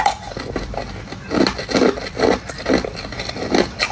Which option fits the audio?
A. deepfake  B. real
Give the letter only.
B